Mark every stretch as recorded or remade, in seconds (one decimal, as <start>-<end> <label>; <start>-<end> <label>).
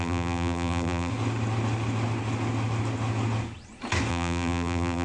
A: 0.0-1.1 remade; 1.1-4.1 recorded; 4.1-5.0 remade